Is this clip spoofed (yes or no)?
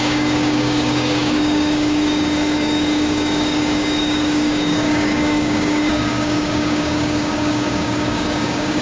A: yes